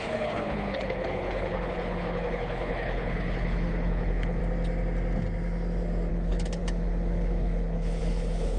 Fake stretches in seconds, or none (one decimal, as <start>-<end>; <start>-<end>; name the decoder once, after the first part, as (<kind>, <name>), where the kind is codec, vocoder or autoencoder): 0.0-4.4 (codec, HILCodec); 6.1-8.6